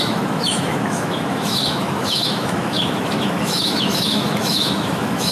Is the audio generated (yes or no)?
yes